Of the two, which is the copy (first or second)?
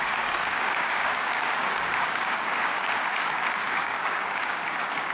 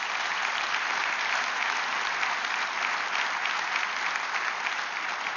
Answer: first